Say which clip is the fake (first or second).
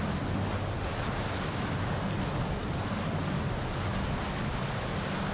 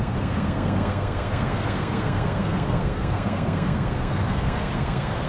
second